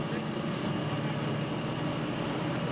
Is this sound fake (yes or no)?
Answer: no